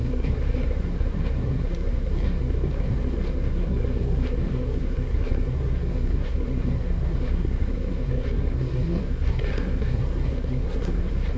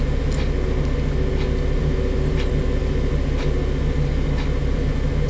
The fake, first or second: first